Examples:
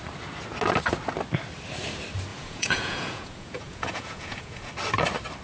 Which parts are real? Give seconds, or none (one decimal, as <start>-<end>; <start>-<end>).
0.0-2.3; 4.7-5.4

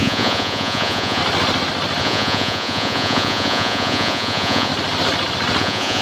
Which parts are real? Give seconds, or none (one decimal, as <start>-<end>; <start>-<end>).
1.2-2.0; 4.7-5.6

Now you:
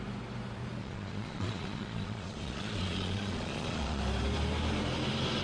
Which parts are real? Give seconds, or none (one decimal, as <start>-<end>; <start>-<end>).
0.0-0.8; 4.0-5.4